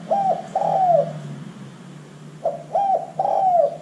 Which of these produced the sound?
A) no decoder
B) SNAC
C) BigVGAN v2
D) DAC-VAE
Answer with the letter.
A